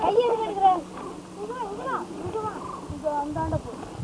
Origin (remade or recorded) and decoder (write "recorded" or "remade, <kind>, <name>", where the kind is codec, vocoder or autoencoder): recorded